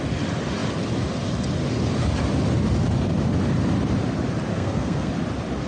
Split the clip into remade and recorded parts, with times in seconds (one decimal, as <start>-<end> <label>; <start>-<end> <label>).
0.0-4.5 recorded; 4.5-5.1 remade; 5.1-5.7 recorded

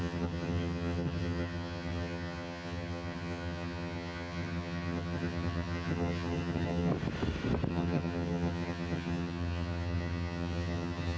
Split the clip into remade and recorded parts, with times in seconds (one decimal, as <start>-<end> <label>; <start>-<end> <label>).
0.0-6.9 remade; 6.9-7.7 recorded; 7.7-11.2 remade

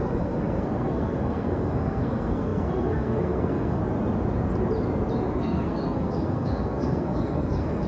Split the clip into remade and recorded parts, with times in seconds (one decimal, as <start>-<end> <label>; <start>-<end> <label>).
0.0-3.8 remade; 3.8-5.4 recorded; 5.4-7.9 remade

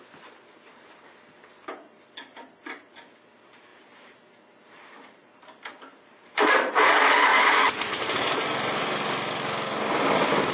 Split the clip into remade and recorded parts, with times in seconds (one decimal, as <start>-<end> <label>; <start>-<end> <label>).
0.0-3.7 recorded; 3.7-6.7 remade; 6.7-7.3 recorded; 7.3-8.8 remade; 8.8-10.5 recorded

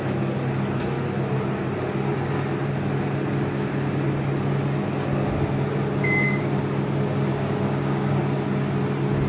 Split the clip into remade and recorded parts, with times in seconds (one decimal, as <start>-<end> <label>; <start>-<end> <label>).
0.0-6.0 recorded; 6.0-6.6 remade; 6.6-7.3 recorded; 7.3-8.2 remade; 8.2-9.3 recorded

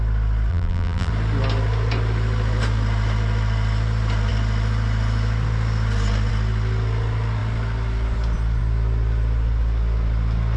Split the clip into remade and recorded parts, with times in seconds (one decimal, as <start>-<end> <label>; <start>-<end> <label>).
0.0-0.5 recorded; 0.5-1.1 remade; 1.1-10.6 recorded